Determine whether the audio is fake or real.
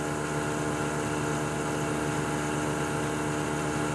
real